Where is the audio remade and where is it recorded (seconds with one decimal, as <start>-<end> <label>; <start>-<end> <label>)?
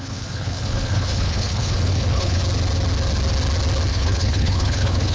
0.0-2.4 remade; 2.4-3.9 recorded; 3.9-5.1 remade